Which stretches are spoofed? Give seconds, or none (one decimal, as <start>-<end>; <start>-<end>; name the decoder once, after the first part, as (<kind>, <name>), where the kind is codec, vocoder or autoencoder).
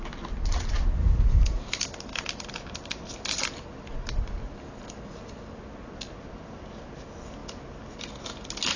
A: none